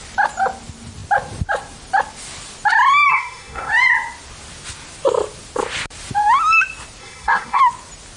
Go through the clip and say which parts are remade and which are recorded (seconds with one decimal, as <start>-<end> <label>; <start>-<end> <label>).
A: 0.0-3.1 recorded; 3.1-3.7 remade; 3.7-7.0 recorded; 7.0-7.6 remade; 7.6-8.2 recorded